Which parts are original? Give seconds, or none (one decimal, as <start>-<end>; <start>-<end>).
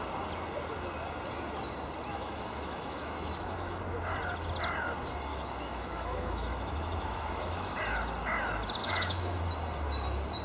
0.0-2.1; 3.8-5.3; 7.8-8.8; 9.4-10.4